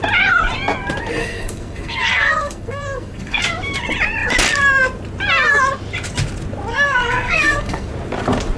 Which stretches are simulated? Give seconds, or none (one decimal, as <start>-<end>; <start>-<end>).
1.2-3.4; 6.7-7.9